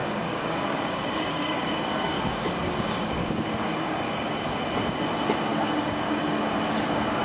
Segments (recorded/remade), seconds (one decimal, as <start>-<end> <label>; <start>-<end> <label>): 0.0-4.3 remade; 4.3-5.5 recorded; 5.5-6.2 remade; 6.2-7.2 recorded